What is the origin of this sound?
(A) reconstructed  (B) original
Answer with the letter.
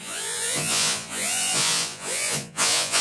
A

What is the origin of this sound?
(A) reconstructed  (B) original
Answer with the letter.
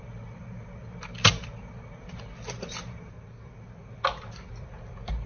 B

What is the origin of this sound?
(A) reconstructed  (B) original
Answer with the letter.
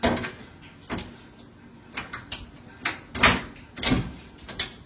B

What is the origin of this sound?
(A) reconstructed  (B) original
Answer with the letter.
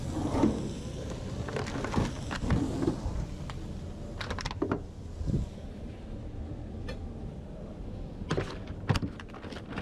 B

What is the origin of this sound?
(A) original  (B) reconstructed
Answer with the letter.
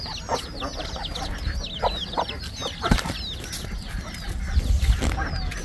A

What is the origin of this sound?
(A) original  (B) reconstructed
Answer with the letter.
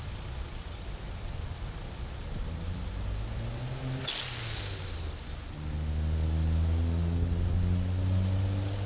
A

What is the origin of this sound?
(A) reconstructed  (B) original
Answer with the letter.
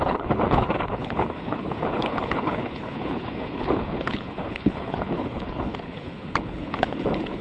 A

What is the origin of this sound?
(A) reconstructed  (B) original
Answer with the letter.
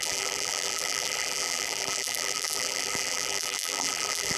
A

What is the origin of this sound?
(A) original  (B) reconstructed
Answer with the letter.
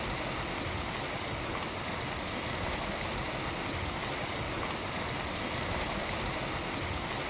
A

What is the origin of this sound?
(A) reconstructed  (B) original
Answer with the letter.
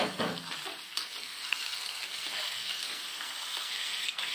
A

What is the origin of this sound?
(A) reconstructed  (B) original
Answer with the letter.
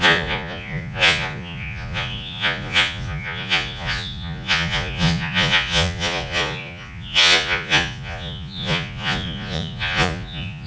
A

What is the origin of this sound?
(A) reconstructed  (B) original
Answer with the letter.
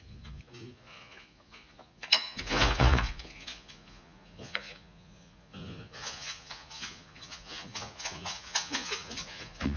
A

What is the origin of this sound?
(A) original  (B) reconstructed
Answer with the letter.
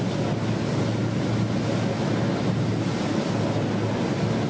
A